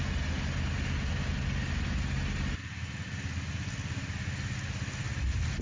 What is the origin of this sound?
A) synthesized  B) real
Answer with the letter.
B